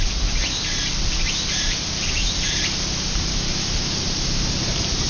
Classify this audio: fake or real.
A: real